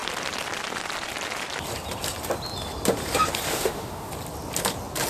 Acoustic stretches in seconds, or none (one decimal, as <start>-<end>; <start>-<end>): 0.0-3.5; 4.1-5.1